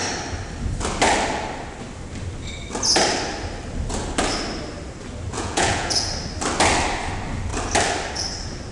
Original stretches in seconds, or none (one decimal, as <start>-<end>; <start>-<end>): 0.0-5.3; 6.1-8.7